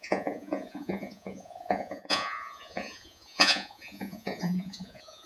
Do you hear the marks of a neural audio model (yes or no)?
yes